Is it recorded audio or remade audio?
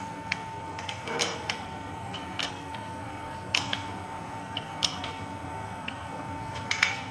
remade